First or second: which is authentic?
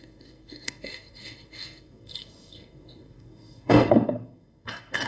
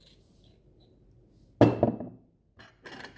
second